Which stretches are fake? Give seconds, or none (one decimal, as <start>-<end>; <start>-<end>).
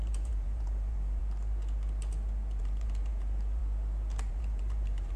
0.0-1.2; 2.6-3.6; 4.3-5.2